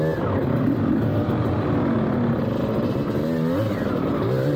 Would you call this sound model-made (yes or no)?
no